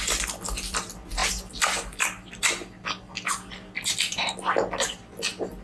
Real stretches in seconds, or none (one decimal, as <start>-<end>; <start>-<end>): 0.0-5.6